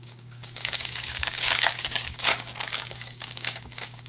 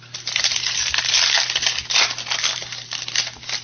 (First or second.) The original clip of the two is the second